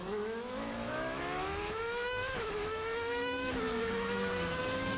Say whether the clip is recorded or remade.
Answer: remade